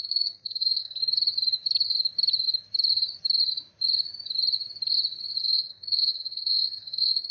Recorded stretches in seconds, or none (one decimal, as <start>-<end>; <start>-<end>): 1.0-5.4